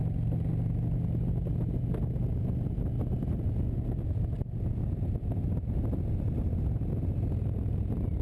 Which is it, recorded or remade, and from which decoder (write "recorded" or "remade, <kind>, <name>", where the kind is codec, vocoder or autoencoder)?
recorded